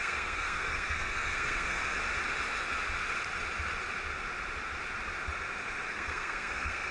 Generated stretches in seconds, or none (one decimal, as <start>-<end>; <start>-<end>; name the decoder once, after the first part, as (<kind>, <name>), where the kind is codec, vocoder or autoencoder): 0.0-1.8 (codec, SNAC); 5.9-6.9